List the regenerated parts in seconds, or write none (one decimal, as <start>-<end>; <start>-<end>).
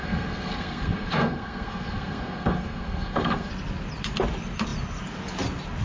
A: 0.0-3.5